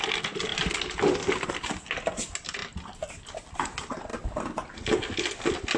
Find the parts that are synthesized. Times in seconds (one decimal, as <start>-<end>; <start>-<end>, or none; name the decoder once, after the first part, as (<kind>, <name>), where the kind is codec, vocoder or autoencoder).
none